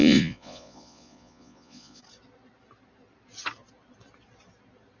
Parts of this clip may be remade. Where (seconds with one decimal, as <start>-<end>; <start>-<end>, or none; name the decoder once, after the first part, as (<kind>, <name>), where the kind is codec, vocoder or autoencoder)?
0.0-2.0 (vocoder, Vocos)